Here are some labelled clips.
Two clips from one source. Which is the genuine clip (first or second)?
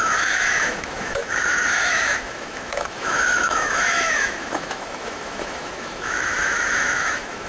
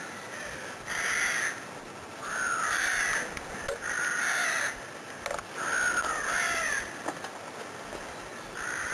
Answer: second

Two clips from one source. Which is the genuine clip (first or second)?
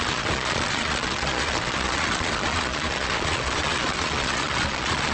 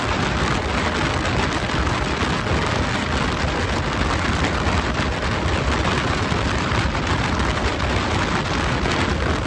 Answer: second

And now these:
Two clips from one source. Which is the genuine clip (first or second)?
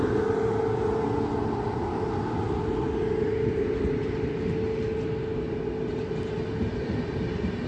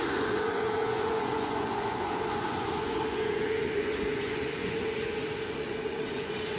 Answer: first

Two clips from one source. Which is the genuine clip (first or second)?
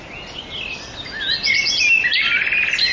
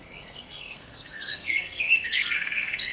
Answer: first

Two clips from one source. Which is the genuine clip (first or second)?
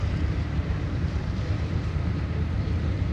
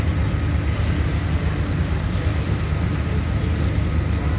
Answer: second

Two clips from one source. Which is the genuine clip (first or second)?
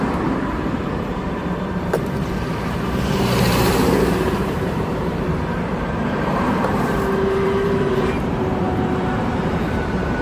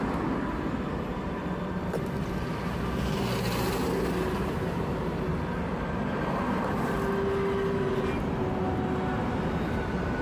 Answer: second